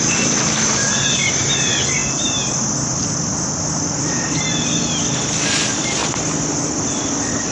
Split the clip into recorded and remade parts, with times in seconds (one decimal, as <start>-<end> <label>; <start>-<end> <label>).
0.0-7.5 recorded